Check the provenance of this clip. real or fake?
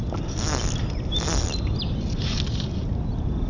real